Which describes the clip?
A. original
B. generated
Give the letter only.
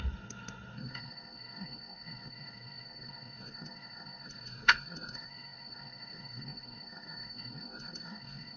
B